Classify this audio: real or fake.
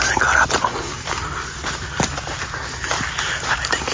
real